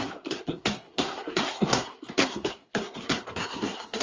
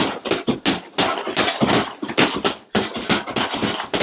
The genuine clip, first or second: second